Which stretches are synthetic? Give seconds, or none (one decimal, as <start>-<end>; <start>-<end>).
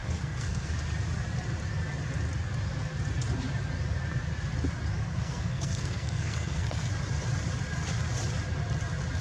0.0-0.7; 5.0-6.9